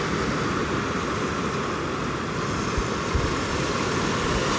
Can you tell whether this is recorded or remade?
recorded